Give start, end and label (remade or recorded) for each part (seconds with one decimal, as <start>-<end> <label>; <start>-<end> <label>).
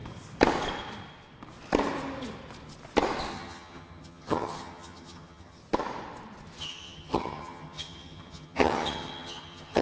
0.0-3.3 recorded; 3.3-5.6 remade; 5.6-6.6 recorded; 6.6-9.8 remade